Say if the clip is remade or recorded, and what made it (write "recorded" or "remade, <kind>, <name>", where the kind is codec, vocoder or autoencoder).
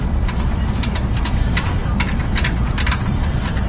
recorded